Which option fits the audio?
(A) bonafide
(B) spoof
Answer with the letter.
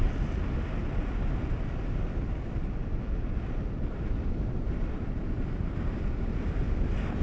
A